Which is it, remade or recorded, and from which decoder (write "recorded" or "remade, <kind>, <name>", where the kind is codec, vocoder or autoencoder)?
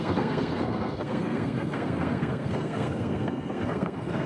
remade, codec, SNAC